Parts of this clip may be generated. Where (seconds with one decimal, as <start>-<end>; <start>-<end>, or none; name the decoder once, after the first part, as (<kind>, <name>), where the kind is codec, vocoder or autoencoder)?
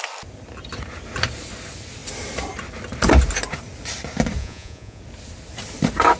4.4-5.0 (vocoder, Vocos)